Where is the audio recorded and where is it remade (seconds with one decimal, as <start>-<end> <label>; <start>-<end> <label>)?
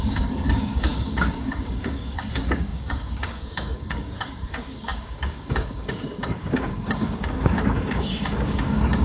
0.0-9.0 remade